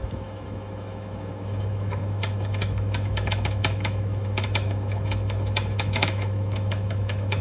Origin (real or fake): fake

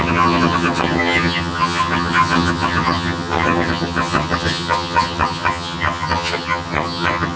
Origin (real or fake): fake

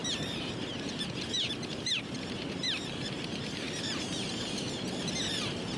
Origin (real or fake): fake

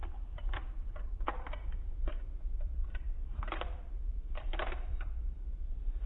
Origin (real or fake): fake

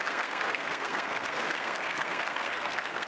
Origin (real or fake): fake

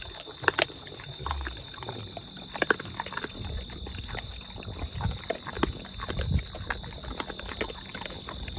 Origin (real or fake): real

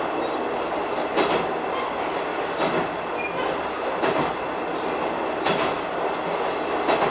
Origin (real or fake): real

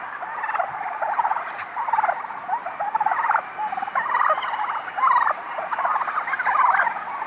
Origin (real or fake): real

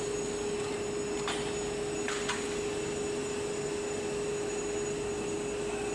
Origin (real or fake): real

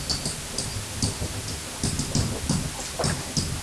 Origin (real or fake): real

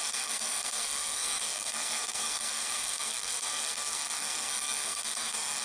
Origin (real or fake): fake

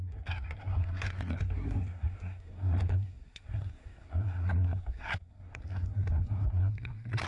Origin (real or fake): fake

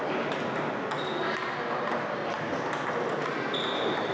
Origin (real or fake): real